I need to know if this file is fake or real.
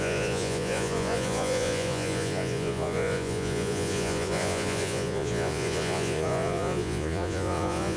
fake